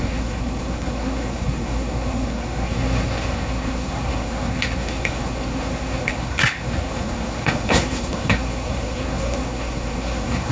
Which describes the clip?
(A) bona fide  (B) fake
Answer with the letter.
B